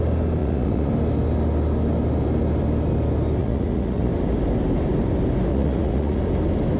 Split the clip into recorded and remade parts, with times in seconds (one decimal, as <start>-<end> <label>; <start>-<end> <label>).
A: 0.0-0.4 recorded; 0.4-0.9 remade; 0.9-3.4 recorded; 3.4-4.1 remade; 4.1-5.5 recorded; 5.5-6.2 remade; 6.2-6.8 recorded

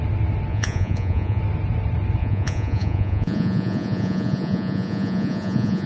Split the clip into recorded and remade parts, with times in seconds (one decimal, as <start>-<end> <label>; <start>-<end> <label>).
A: 0.0-0.5 recorded; 0.5-1.4 remade; 1.4-2.2 recorded; 2.2-5.9 remade

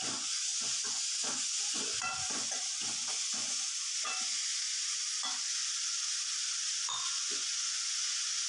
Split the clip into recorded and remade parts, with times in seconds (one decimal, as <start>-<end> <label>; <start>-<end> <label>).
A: 0.0-5.0 remade; 5.0-6.7 recorded; 6.7-8.5 remade

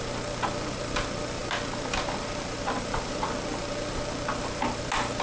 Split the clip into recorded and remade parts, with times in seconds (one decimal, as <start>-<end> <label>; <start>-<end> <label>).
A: 0.0-5.2 recorded

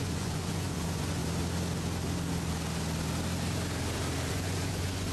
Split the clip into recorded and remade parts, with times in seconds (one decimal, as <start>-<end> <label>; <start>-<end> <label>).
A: 0.0-1.2 remade; 1.2-4.3 recorded; 4.3-5.1 remade